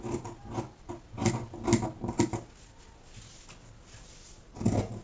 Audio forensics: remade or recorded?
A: recorded